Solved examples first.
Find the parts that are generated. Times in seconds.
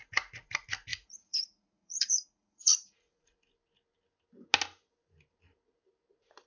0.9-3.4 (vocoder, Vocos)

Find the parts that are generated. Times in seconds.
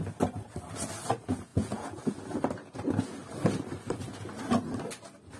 1.5-2.0 (vocoder, Vocos)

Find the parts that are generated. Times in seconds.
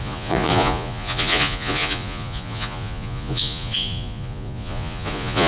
0.0-5.5 (vocoder, Vocos)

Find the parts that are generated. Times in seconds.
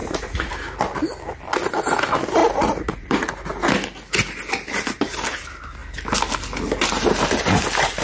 0.0-0.5 (vocoder, Vocos); 2.4-3.3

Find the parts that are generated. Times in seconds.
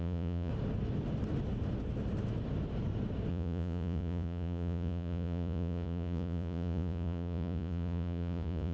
0.0-0.5 (vocoder, Vocos); 3.3-8.7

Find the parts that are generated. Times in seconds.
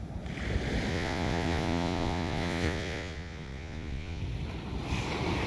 0.9-4.2 (vocoder, Vocos)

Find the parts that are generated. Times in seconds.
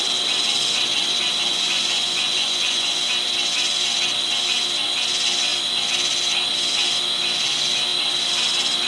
1.5-3.0 (vocoder, Vocos)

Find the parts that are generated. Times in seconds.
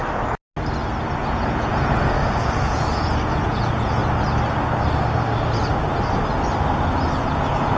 1.2-4.0 (vocoder, Vocos); 7.2-7.8